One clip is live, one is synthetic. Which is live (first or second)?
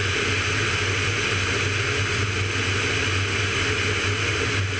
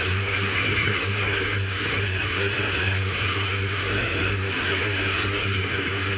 first